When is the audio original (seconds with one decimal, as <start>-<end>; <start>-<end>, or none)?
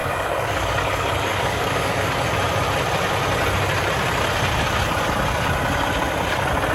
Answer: 2.1-6.7